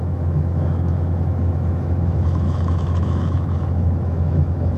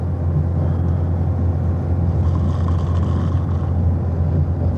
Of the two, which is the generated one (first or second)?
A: first